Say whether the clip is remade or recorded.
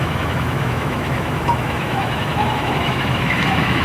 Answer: remade